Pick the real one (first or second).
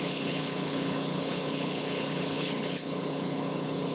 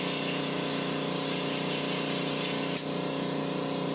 second